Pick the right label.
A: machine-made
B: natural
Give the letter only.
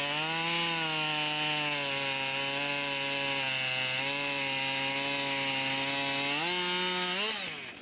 B